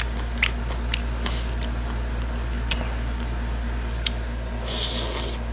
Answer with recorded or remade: recorded